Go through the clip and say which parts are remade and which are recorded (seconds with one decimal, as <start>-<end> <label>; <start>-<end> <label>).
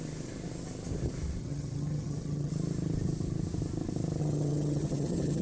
0.0-1.4 recorded; 1.4-2.5 remade; 2.5-4.2 recorded; 4.2-5.4 remade